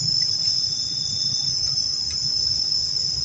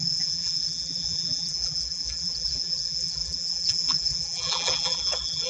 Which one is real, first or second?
first